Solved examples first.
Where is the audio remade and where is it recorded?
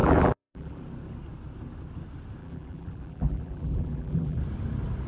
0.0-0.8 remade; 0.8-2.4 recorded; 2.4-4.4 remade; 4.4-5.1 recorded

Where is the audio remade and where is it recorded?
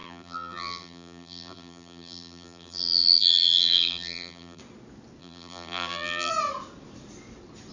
0.0-4.6 remade; 4.6-5.2 recorded; 5.2-6.3 remade; 6.3-7.7 recorded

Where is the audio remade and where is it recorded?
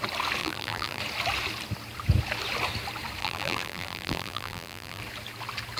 0.0-0.4 recorded; 0.4-1.0 remade; 1.0-3.2 recorded; 3.2-5.0 remade; 5.0-5.8 recorded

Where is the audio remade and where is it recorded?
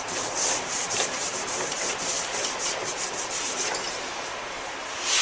0.0-5.2 remade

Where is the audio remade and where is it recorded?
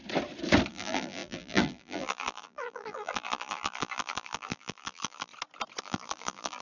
0.0-0.7 recorded; 0.7-5.3 remade; 5.3-5.8 recorded; 5.8-6.6 remade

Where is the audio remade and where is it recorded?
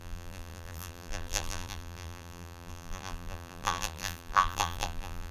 0.0-5.3 remade